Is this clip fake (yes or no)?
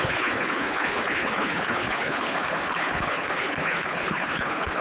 yes